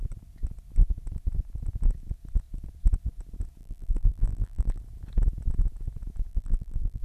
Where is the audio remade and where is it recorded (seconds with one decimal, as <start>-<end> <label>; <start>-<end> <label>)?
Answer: 0.0-3.6 recorded; 3.6-4.8 remade; 4.8-6.3 recorded; 6.3-7.0 remade